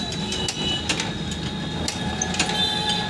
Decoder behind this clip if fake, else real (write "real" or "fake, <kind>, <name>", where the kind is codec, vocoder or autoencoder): real